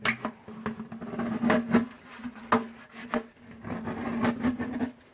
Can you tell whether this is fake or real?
real